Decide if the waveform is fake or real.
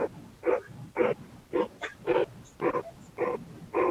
real